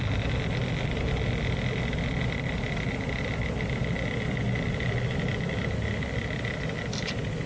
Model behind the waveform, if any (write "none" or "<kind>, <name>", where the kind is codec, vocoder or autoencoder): none